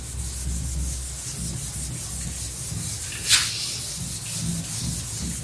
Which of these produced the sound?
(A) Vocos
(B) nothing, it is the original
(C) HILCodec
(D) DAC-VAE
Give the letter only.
B